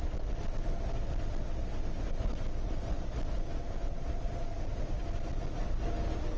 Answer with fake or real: real